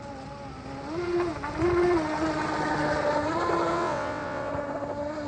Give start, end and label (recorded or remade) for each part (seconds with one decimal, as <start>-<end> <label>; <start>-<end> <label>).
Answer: 0.0-3.7 recorded; 3.7-4.5 remade; 4.5-5.3 recorded

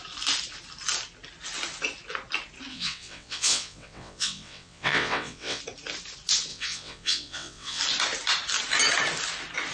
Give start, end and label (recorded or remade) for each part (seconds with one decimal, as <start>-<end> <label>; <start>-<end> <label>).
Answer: 0.0-2.7 recorded; 2.7-5.6 remade; 5.6-6.5 recorded; 6.5-7.8 remade; 7.8-9.7 recorded

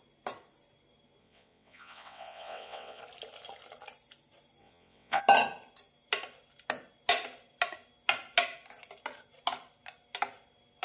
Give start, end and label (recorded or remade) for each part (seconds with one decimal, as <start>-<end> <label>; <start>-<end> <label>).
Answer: 0.0-1.2 recorded; 1.2-3.0 remade; 3.0-4.6 recorded; 4.6-5.2 remade; 5.2-10.8 recorded

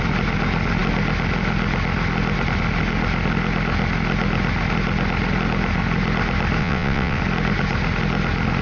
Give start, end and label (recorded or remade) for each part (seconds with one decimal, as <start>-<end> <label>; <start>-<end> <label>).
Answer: 0.0-6.6 recorded; 6.6-7.2 remade; 7.2-8.6 recorded

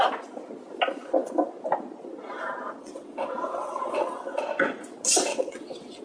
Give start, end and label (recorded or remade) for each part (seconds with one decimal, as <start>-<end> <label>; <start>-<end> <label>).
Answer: 0.0-2.8 recorded; 2.8-4.4 remade; 4.4-5.3 recorded; 5.3-6.0 remade

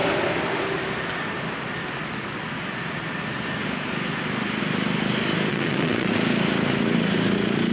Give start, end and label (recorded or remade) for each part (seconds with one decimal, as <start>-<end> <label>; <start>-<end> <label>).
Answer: 0.0-5.5 recorded; 5.5-6.1 remade; 6.1-7.7 recorded